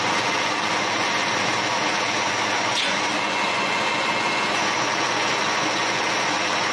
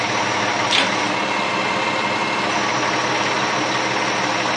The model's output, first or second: first